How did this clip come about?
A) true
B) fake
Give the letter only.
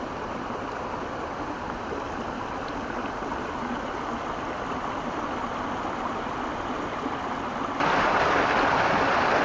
A